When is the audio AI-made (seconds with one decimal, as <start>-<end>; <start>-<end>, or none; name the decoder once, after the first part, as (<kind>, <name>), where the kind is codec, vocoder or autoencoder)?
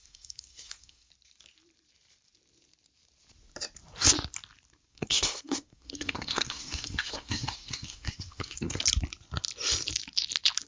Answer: 0.0-1.1 (codec, SNAC); 4.9-8.8